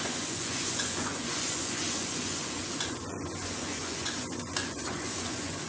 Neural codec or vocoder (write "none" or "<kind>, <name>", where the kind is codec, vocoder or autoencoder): vocoder, Vocos